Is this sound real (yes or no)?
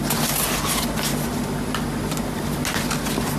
yes